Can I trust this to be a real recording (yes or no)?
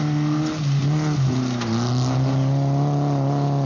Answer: yes